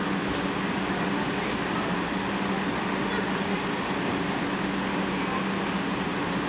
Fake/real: real